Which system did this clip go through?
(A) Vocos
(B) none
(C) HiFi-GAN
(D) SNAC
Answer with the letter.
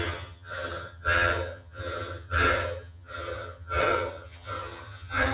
C